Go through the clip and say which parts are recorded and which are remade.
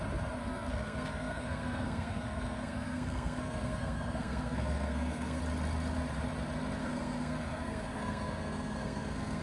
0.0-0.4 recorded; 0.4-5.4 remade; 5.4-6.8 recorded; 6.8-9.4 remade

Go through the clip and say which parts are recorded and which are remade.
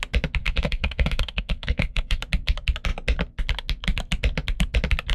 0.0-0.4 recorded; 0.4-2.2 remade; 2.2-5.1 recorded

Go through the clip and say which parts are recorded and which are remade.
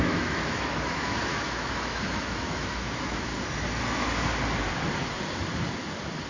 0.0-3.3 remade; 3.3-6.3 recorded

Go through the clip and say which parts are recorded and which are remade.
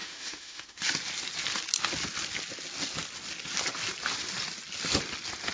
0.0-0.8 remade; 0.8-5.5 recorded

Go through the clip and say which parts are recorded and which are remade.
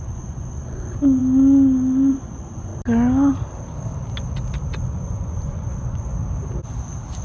0.0-1.2 remade; 1.2-2.1 recorded; 2.1-2.7 remade; 2.7-4.8 recorded; 4.8-6.1 remade; 6.1-7.2 recorded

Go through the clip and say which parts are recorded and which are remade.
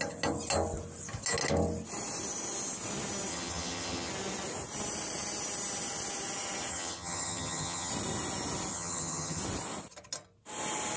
0.0-3.3 recorded; 3.3-4.1 remade; 4.1-6.7 recorded; 6.7-7.9 remade; 7.9-8.7 recorded; 8.7-9.4 remade; 9.4-11.0 recorded